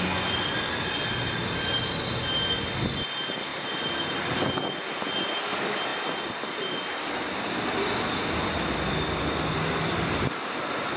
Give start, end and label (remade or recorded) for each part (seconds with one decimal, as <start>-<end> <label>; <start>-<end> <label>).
0.0-11.0 recorded